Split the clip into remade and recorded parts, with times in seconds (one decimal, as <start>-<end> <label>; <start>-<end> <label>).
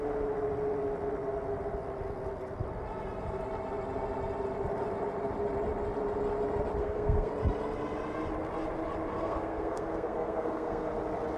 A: 0.0-6.8 recorded; 6.8-7.3 remade; 7.3-9.1 recorded; 9.1-10.9 remade; 10.9-11.4 recorded